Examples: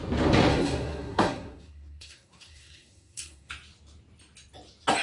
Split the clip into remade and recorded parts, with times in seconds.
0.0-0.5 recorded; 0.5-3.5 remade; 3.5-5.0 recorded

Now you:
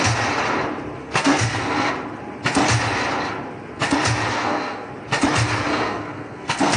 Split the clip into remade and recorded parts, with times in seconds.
0.0-1.0 recorded; 1.0-1.9 remade; 1.9-4.3 recorded; 4.3-4.9 remade; 4.9-5.7 recorded; 5.7-6.8 remade

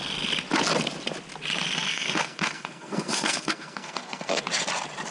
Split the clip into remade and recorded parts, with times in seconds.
0.0-1.9 recorded; 1.9-4.4 remade; 4.4-5.1 recorded

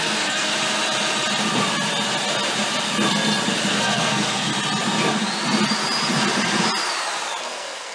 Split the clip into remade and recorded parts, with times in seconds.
0.0-0.5 remade; 0.5-3.7 recorded; 3.7-4.5 remade; 4.5-7.4 recorded; 7.4-7.9 remade

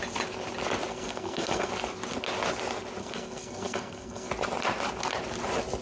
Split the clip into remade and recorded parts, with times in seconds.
0.0-0.9 recorded; 0.9-1.7 remade; 1.7-3.0 recorded; 3.0-4.3 remade; 4.3-5.8 recorded